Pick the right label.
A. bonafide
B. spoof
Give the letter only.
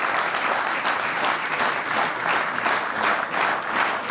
A